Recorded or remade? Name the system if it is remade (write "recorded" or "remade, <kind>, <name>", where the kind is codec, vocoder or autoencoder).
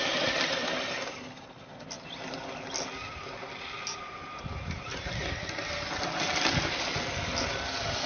recorded